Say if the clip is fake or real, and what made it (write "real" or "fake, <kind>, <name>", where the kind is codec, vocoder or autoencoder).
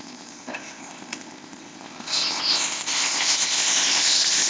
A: fake, codec, ZipCodec